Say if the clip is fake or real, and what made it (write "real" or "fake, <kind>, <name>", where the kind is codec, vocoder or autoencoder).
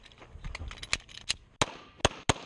real